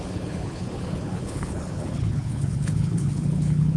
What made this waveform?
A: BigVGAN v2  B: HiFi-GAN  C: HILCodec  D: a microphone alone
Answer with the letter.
C